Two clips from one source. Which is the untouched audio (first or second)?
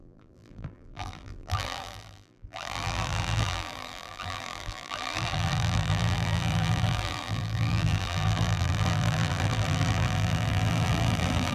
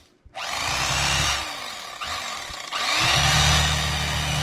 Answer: second